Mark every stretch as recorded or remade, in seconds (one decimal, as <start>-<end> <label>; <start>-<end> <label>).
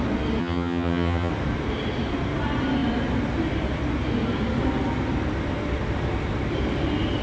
0.0-0.4 recorded; 0.4-1.3 remade; 1.3-7.2 recorded